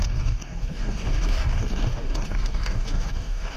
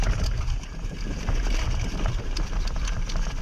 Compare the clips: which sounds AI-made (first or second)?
first